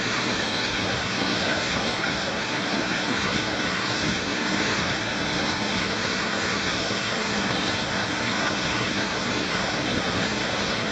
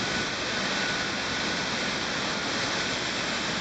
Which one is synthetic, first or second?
first